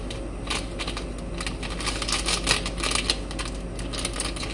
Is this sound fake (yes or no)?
no